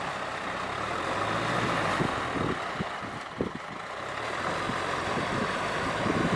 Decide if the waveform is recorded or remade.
recorded